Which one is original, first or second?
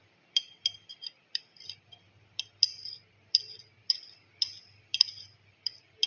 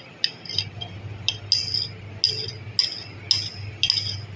second